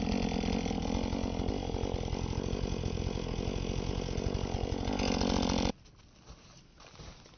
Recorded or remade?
recorded